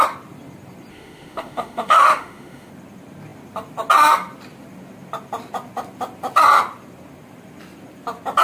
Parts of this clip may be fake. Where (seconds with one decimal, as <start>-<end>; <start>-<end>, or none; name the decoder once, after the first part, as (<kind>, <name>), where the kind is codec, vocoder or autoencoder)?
0.9-2.7 (autoencoder, DAC-VAE)